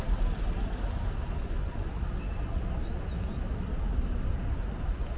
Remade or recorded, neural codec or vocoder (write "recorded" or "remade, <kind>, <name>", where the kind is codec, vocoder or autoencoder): recorded